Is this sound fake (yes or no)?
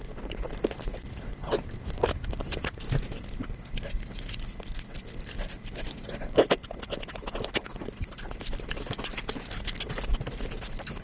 no